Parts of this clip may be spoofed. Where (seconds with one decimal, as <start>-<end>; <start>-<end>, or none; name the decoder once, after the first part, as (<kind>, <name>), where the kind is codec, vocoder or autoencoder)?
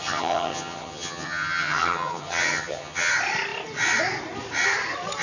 0.0-3.1 (vocoder, HiFi-GAN)